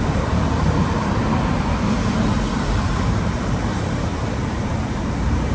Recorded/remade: remade